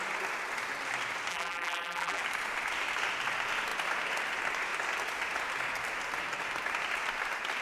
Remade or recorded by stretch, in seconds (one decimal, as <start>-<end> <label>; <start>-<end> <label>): 0.0-1.3 recorded; 1.3-2.2 remade; 2.2-7.6 recorded